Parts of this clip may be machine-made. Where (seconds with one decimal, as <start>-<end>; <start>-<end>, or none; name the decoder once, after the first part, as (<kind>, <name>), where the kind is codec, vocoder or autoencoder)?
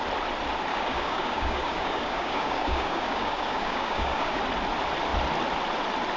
0.7-4.4 (codec, DAC)